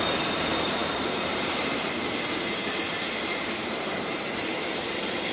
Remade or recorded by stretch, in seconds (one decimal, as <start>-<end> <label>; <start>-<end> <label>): 0.0-5.3 remade